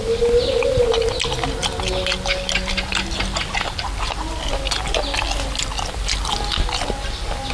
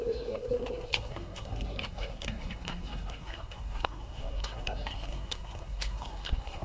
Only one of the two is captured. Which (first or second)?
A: first